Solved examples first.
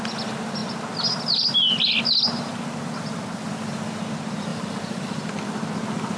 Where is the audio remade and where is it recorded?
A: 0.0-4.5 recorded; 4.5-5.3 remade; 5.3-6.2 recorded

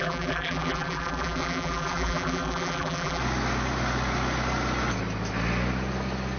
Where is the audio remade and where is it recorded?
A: 0.0-3.2 remade; 3.2-6.4 recorded